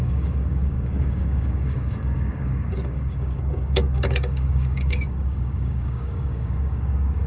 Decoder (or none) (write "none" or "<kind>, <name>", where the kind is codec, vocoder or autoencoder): codec, DAC